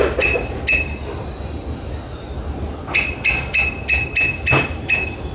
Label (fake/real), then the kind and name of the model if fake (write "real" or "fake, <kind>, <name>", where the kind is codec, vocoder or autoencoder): real